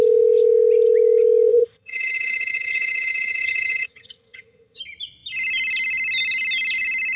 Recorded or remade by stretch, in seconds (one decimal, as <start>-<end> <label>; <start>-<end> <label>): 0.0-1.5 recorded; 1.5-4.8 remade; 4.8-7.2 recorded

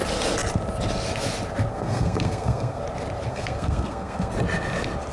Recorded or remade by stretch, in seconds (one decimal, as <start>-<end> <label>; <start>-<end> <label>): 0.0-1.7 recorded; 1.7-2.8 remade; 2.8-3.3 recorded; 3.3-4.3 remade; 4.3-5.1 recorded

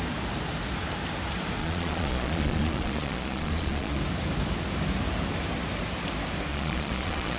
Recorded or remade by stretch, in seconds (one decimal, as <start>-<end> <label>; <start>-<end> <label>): 0.0-1.6 recorded; 1.6-4.0 remade; 4.0-6.5 recorded; 6.5-7.4 remade

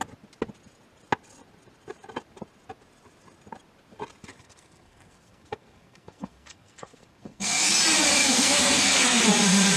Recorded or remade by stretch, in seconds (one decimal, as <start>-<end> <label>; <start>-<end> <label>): 0.0-4.3 recorded; 4.3-7.7 remade; 7.7-8.2 recorded; 8.2-9.2 remade; 9.2-9.8 recorded